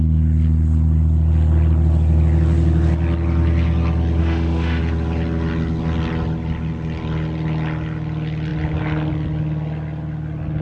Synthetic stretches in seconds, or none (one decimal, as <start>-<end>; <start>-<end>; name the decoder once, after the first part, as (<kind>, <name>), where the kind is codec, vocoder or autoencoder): 4.2-4.8 (autoencoder, DAC-VAE)